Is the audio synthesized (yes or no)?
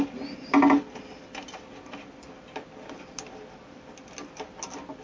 no